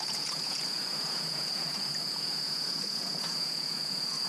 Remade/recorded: remade